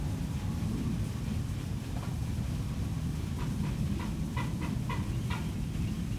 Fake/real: fake